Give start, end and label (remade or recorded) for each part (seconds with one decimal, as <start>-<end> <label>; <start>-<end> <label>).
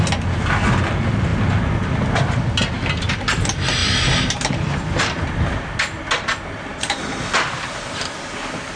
0.0-8.8 recorded